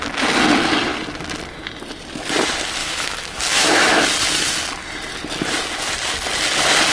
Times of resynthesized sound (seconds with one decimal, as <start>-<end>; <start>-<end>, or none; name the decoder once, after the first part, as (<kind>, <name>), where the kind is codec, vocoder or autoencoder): 2.8-4.0 (autoencoder, DAC-VAE)